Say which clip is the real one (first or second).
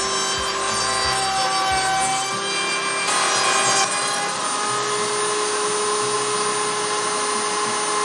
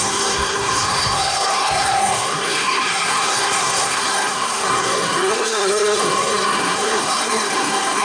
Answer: first